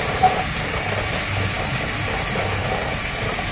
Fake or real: real